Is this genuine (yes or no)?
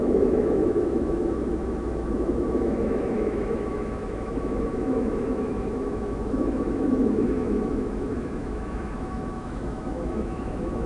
no